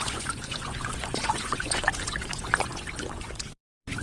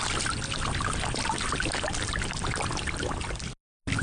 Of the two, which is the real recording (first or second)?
second